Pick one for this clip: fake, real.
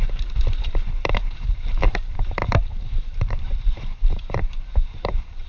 fake